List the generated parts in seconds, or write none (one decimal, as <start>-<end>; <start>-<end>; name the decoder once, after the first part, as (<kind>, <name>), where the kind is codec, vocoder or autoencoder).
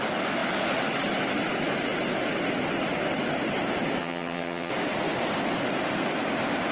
4.0-4.7 (vocoder, HiFi-GAN)